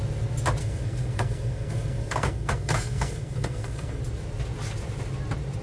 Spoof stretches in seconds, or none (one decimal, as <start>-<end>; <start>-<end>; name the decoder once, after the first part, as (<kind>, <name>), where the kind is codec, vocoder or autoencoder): 0.6-4.0 (codec, SNAC)